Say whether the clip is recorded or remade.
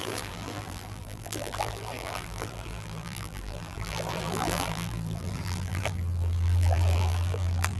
remade